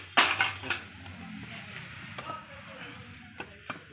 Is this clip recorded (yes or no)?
yes